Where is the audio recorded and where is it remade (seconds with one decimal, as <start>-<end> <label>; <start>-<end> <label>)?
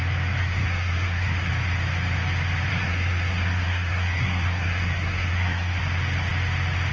0.0-0.4 recorded; 0.4-1.5 remade; 1.5-2.7 recorded; 2.7-5.8 remade; 5.8-6.9 recorded